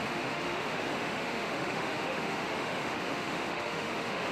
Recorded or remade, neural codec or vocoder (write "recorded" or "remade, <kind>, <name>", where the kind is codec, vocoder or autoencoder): remade, autoencoder, DAC-VAE